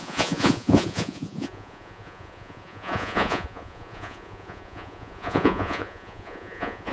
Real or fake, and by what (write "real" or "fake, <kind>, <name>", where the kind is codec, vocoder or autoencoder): fake, vocoder, Vocos